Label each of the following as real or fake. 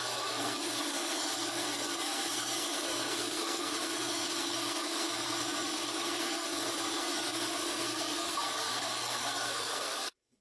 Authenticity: fake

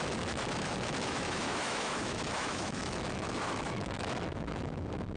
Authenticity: fake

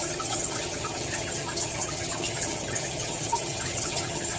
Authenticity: fake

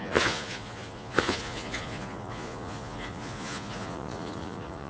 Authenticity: fake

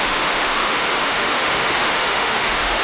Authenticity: fake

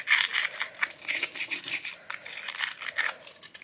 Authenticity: real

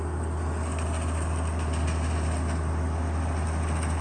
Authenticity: real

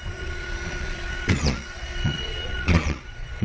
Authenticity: fake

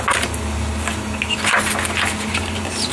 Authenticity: real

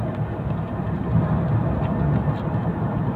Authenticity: real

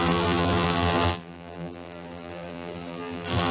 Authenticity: fake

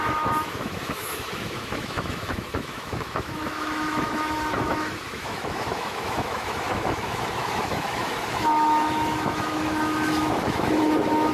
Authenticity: fake